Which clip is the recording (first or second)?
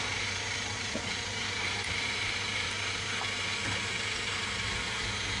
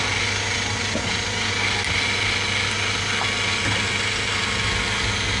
second